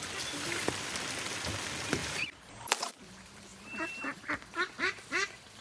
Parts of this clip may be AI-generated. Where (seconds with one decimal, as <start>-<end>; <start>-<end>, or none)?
2.0-2.9; 3.5-4.3